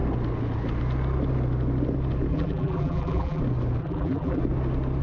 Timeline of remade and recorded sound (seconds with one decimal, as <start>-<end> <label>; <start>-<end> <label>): 0.0-2.3 recorded; 2.3-3.4 remade; 3.4-3.8 recorded; 3.8-4.4 remade; 4.4-5.0 recorded